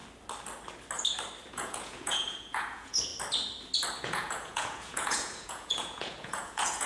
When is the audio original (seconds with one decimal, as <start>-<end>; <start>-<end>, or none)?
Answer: 0.0-1.5; 3.1-4.0